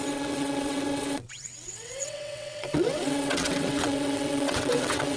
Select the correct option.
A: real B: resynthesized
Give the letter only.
B